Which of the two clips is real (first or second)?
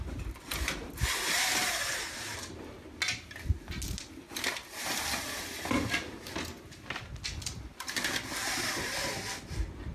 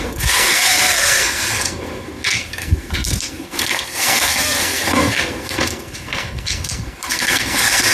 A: first